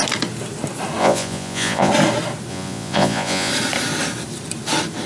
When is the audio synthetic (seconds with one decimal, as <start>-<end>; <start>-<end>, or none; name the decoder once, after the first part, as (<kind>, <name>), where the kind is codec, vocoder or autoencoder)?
1.0-1.9 (vocoder, Vocos); 2.5-3.5